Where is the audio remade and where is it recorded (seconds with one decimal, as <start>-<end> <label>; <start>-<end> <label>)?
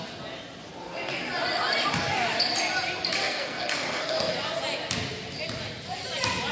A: 0.0-3.2 recorded; 3.2-4.3 remade; 4.3-6.5 recorded